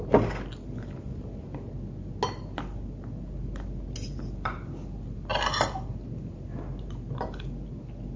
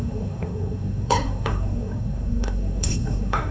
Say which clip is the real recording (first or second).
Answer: first